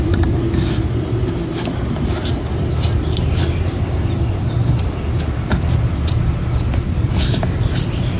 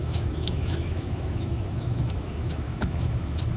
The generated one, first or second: second